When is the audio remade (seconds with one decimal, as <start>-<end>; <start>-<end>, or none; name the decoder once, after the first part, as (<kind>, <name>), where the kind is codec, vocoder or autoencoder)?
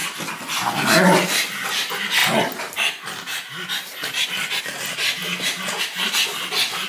none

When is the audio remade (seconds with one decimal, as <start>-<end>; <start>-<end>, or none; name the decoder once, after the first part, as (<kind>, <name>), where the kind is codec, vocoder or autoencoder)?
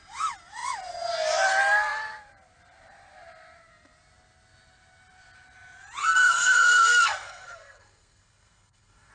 6.0-9.1 (codec, SNAC)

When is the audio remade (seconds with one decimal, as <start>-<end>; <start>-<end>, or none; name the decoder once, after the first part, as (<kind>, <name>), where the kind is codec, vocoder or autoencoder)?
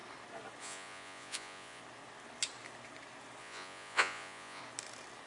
0.6-1.8 (vocoder, Vocos); 3.4-4.6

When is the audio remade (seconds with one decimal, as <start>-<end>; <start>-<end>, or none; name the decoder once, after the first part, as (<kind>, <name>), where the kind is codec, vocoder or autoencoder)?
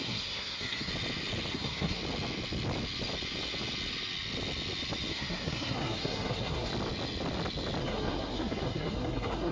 0.0-0.9 (codec, SNAC); 1.5-2.0; 5.1-6.7; 7.8-9.5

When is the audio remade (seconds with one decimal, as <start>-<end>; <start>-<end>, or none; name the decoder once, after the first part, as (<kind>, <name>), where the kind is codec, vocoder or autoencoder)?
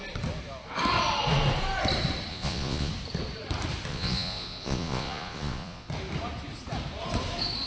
2.3-2.9 (vocoder, Vocos); 3.9-5.9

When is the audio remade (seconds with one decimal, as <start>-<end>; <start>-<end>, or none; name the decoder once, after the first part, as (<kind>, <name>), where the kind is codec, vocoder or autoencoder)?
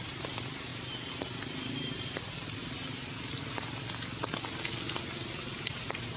0.0-2.6 (vocoder, BigVGAN v2); 5.7-6.2